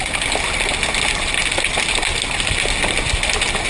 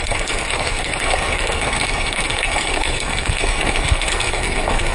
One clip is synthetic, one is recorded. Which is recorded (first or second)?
first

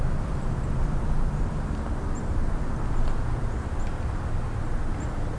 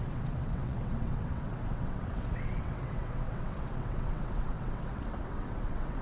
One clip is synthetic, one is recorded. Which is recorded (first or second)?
first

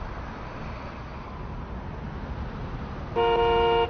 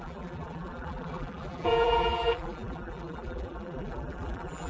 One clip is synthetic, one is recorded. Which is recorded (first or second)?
first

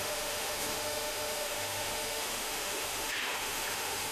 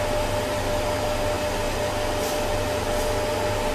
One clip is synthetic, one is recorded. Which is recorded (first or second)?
second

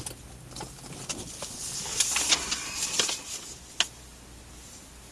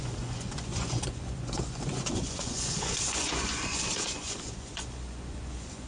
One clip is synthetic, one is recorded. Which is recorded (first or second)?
first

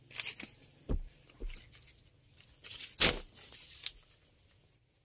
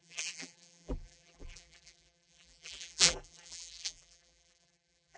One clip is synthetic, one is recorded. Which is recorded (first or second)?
first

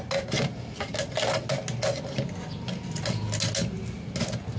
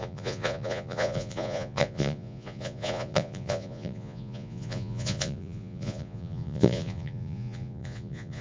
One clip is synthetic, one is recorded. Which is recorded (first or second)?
first